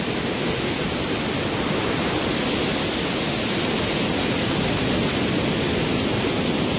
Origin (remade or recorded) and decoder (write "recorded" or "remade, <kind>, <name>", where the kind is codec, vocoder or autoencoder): recorded